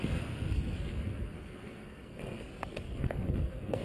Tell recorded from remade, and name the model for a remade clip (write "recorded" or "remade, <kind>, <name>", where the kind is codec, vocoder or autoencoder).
remade, codec, SNAC